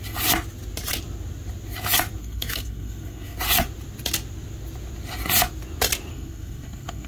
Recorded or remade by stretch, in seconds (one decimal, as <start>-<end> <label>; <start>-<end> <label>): 0.0-2.2 recorded; 2.2-3.4 remade; 3.4-6.1 recorded; 6.1-7.1 remade